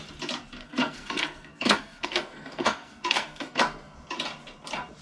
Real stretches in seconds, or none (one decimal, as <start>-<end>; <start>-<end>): 0.0-0.6; 3.6-5.0